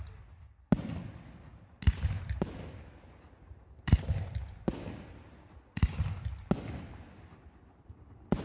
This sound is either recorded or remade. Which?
recorded